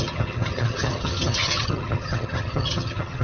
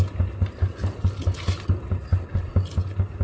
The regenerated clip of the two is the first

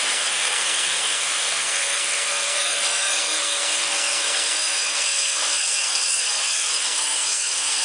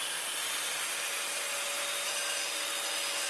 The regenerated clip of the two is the first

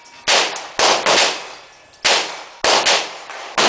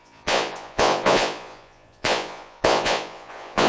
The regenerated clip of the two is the second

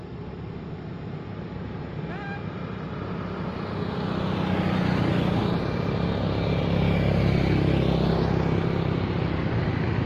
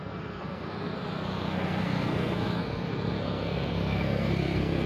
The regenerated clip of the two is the second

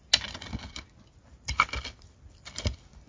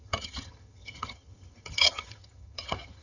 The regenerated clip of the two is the second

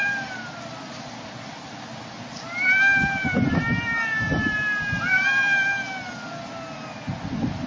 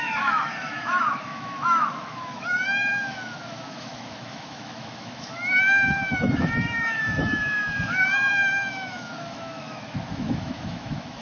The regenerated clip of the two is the second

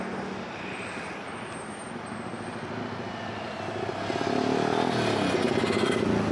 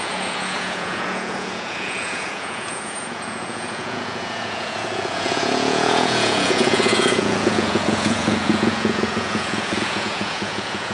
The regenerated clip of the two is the second